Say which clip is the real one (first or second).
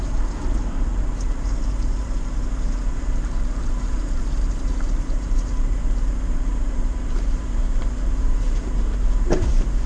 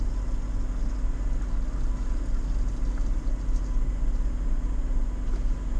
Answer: second